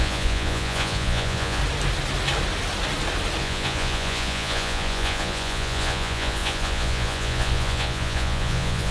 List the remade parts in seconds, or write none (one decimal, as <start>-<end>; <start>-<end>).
0.0-1.6; 3.4-8.9